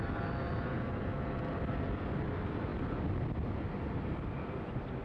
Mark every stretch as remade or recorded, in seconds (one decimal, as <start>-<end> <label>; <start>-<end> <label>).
0.0-5.0 recorded